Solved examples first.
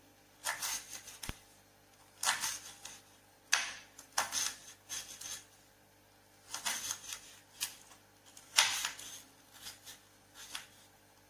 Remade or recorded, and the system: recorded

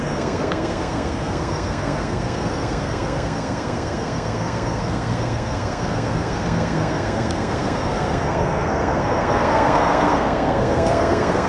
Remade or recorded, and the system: remade, codec, SNAC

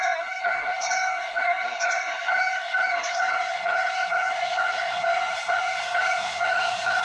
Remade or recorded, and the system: remade, codec, SNAC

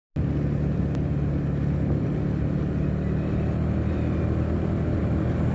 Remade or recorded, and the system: recorded